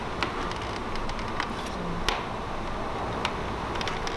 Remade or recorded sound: recorded